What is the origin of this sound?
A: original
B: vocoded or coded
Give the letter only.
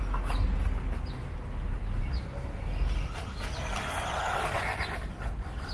A